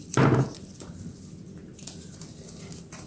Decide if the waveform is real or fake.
real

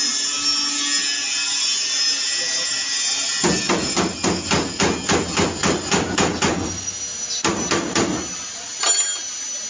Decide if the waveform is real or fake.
real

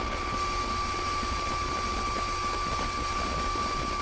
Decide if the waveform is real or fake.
real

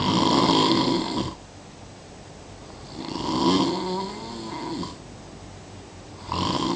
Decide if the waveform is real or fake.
real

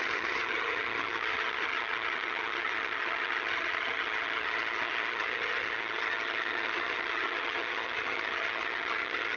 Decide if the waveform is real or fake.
fake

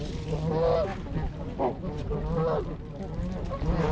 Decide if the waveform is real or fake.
real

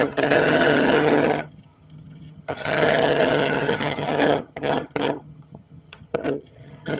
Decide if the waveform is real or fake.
fake